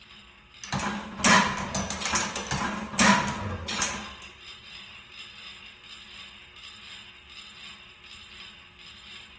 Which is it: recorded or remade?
recorded